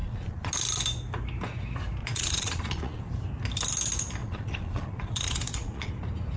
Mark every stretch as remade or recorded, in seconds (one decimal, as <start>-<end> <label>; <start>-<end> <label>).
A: 0.0-0.5 remade; 0.5-2.0 recorded; 2.0-3.0 remade; 3.0-4.2 recorded; 4.2-5.9 remade; 5.9-6.4 recorded